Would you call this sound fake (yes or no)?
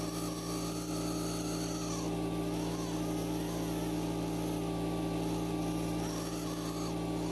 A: no